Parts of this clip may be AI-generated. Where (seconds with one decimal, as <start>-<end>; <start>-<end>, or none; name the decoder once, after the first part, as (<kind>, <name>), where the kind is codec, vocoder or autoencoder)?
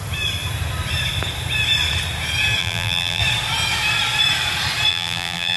2.6-3.2 (vocoder, BigVGAN v2); 4.9-5.6